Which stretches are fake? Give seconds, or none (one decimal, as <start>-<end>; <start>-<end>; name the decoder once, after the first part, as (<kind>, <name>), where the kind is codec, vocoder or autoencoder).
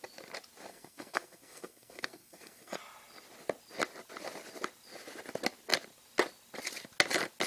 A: 0.7-2.8 (codec, SNAC)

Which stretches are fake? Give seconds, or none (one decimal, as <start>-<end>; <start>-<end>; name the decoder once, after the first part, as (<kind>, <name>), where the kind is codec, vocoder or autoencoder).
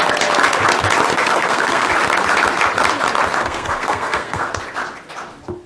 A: 1.1-1.9 (codec, SNAC); 3.4-4.5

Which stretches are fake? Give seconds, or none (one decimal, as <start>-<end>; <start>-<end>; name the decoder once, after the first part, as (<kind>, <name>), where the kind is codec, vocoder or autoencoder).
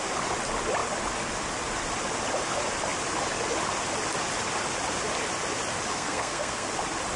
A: 5.9-6.7 (codec, SNAC)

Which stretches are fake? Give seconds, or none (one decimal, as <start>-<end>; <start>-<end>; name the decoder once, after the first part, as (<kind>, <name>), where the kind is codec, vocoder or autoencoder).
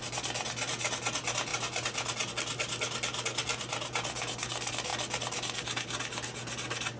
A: none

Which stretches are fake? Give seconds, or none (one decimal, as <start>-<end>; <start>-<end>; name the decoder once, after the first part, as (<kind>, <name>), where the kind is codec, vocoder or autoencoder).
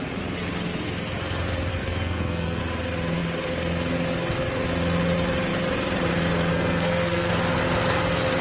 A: 1.7-2.6 (codec, SNAC); 6.5-7.3